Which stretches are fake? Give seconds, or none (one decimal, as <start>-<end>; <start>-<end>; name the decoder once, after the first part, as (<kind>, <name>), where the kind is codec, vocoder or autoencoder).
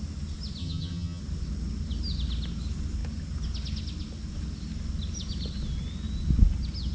0.6-1.2 (vocoder, HiFi-GAN)